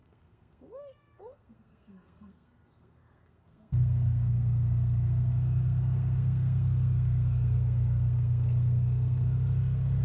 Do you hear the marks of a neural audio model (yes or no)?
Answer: yes